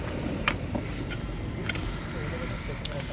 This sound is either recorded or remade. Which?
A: recorded